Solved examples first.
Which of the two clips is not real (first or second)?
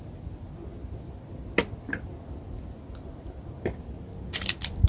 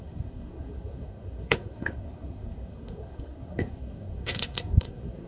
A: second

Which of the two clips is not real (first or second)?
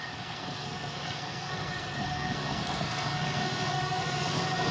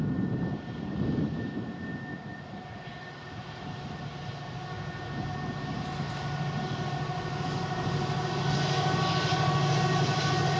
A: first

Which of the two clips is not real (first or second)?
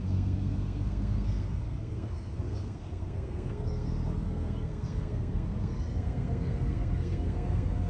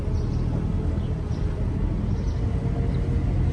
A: first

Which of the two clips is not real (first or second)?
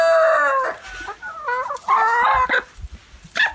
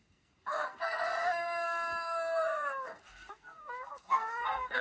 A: second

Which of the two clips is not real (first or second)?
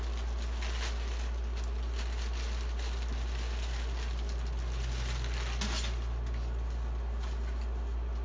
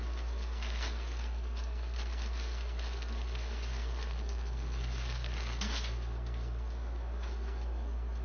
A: second